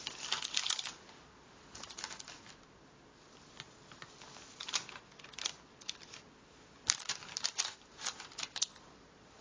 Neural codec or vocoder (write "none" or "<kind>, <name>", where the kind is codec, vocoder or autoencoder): none